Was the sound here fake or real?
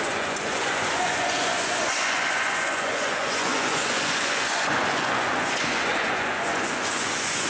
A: fake